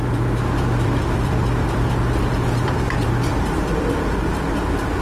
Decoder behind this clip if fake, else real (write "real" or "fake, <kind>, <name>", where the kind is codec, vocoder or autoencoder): fake, vocoder, BigVGAN v2